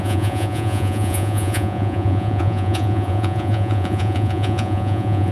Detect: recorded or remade remade